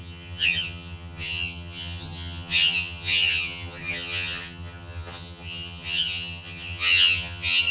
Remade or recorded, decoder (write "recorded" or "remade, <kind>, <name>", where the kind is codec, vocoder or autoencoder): remade, vocoder, HiFi-GAN